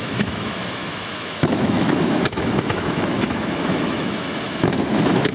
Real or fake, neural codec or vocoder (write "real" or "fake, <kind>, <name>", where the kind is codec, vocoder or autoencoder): fake, autoencoder, DAC-VAE